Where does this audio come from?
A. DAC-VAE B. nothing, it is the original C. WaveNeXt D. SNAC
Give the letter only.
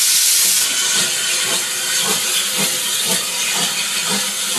B